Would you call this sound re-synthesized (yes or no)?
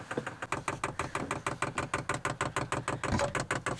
no